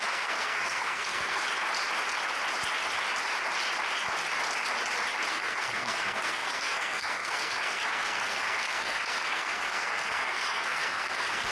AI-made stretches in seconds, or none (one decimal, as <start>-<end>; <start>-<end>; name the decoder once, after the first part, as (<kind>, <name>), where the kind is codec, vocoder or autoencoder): 0.0-1.4 (codec, SNAC); 5.3-11.5